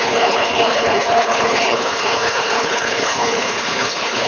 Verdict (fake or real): fake